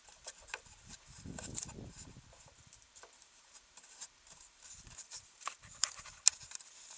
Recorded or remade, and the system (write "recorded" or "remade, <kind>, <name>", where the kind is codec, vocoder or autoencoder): remade, vocoder, BigVGAN v2